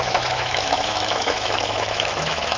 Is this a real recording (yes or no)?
no